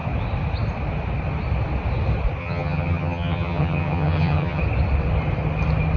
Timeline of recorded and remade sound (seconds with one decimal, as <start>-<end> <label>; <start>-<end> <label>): 0.0-2.4 recorded; 2.4-4.6 remade; 4.6-6.0 recorded

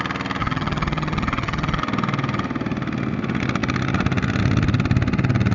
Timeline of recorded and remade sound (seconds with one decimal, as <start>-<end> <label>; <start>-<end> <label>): 0.0-0.4 recorded; 0.4-1.8 remade; 1.8-5.5 recorded